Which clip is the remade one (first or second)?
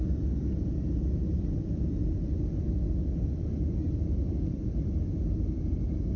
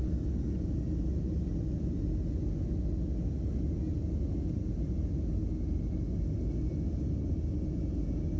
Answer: first